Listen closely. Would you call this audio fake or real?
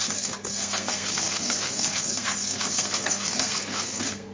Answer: fake